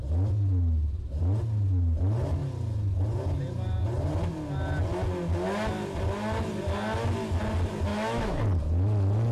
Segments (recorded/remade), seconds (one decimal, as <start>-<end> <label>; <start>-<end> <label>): 0.0-7.9 recorded; 7.9-8.4 remade; 8.4-9.3 recorded